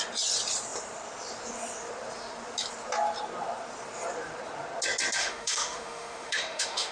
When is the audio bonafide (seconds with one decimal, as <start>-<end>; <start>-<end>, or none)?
0.0-5.2